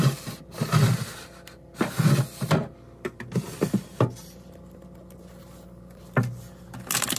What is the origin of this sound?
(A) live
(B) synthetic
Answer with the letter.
A